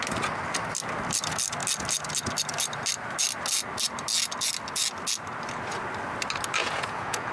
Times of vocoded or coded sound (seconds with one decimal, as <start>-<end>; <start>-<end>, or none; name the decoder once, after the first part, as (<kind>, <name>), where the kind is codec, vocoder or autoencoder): 6.6-7.3 (vocoder, Vocos)